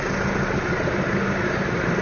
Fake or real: real